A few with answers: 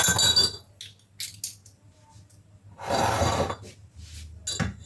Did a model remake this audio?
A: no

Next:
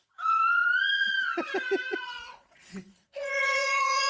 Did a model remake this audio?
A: yes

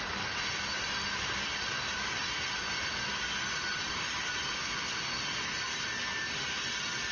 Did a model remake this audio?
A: no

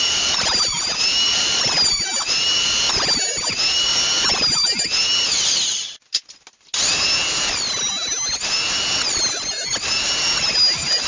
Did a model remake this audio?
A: no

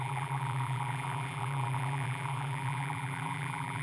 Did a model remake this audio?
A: yes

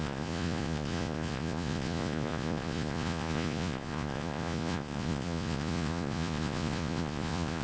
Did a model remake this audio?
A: yes